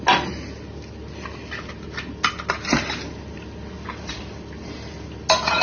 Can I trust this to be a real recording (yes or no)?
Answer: yes